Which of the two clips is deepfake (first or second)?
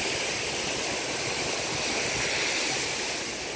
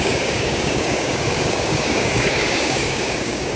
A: second